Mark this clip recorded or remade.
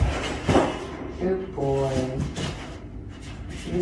recorded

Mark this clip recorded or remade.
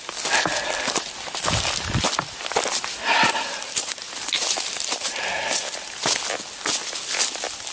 recorded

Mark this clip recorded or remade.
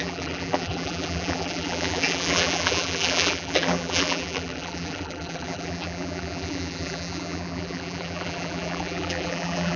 remade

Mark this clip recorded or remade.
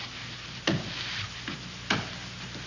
recorded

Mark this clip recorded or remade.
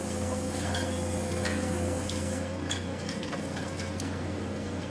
remade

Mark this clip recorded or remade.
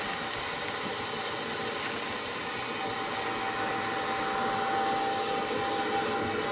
recorded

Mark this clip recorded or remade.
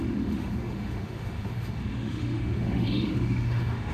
remade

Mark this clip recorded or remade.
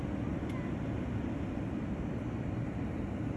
recorded